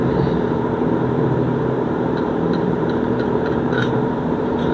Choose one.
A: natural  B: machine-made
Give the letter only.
B